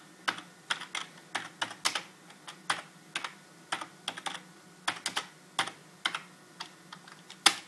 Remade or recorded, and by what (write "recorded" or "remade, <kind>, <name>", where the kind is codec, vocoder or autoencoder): recorded